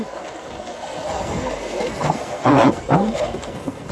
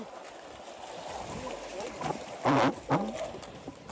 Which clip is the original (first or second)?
second